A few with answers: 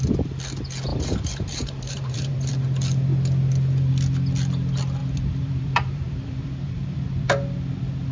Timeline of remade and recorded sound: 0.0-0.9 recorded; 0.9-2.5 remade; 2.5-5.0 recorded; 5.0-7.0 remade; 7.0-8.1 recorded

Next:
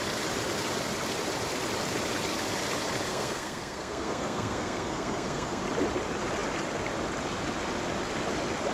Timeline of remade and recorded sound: 0.0-3.1 recorded; 3.1-5.6 remade; 5.6-8.7 recorded

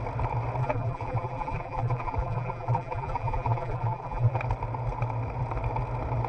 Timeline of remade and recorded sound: 0.0-0.6 recorded; 0.6-4.4 remade; 4.4-6.3 recorded

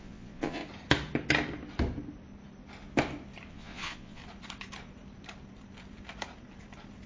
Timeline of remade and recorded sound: 0.0-0.6 remade; 0.6-3.5 recorded; 3.5-4.2 remade; 4.2-7.1 recorded